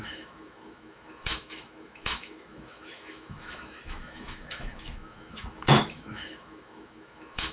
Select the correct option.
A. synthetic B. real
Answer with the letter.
A